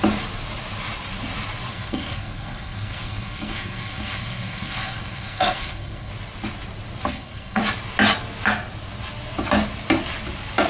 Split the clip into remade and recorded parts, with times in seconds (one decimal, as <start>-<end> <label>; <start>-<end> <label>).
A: 0.0-1.7 recorded; 1.7-6.1 remade; 6.1-7.1 recorded; 7.1-7.6 remade; 7.6-10.7 recorded